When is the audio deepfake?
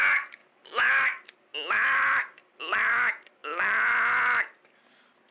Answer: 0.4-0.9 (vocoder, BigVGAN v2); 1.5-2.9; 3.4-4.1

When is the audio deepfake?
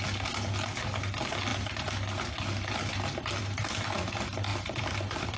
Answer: 3.4-4.0 (vocoder, BigVGAN v2); 4.5-5.4